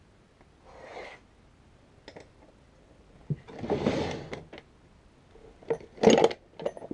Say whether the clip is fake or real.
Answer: real